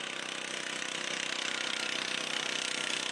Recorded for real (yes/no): yes